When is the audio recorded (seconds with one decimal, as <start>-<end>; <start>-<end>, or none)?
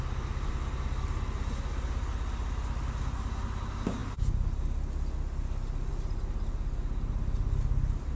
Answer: 0.0-8.2